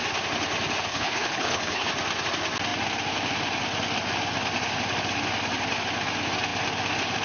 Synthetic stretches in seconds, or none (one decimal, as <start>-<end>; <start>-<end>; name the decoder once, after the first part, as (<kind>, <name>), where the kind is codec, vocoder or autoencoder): 0.9-1.9 (codec, HILCodec)